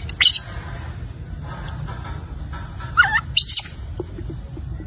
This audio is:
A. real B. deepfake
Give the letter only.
A